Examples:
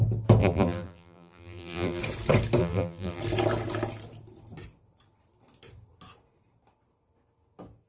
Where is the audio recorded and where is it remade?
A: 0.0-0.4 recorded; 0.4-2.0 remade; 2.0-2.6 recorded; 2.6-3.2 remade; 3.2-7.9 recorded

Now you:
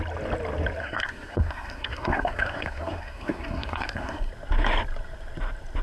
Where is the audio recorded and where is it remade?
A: 0.0-0.8 recorded; 0.8-4.3 remade; 4.3-5.8 recorded